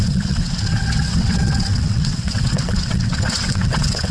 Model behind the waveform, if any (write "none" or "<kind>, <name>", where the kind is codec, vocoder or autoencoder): vocoder, WaveNeXt